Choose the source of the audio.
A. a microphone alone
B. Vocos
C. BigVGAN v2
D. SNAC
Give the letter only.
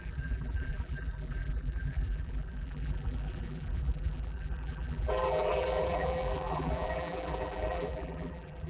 C